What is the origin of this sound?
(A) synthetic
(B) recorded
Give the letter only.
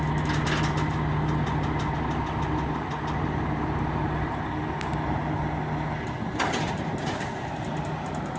B